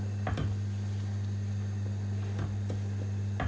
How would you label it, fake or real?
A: real